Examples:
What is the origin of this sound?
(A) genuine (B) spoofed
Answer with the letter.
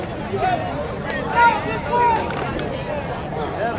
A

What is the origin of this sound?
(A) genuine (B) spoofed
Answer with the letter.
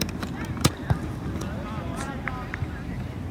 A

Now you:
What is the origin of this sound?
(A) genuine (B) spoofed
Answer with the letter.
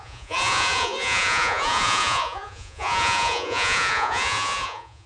B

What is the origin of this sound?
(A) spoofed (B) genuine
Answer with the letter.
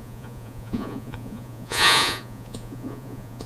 A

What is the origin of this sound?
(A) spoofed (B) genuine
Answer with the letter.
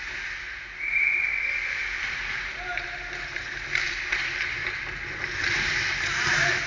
B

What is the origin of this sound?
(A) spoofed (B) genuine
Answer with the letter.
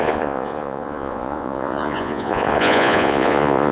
A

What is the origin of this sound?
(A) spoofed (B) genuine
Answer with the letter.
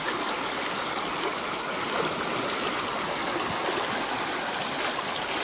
B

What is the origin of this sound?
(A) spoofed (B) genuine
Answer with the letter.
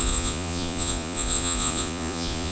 A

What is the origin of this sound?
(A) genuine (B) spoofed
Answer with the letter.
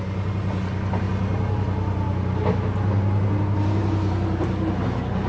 A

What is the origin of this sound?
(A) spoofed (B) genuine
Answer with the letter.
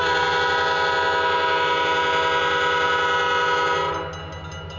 B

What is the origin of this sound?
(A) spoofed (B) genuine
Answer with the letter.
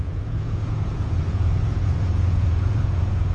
A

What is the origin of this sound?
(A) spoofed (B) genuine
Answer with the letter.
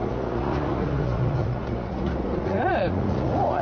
A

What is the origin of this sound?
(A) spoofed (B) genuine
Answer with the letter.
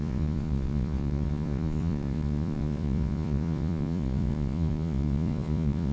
A